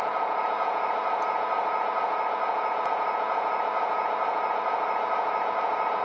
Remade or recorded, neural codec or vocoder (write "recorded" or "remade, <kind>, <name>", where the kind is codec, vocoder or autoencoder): remade, vocoder, Vocos